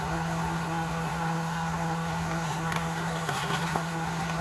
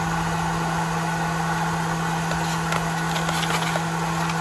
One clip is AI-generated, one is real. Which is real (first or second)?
second